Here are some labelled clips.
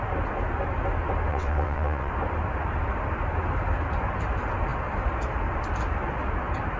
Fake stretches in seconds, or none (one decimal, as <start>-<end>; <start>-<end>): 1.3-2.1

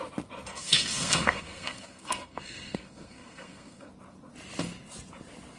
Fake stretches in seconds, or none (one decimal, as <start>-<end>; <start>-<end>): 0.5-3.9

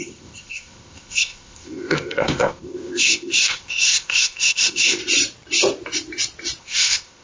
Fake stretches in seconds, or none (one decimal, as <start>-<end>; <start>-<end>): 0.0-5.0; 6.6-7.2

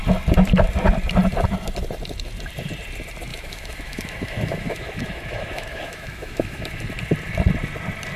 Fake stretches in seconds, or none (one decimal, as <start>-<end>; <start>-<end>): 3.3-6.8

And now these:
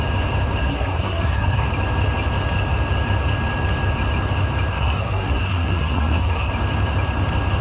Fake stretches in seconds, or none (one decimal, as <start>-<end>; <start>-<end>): 0.6-1.7; 4.7-6.5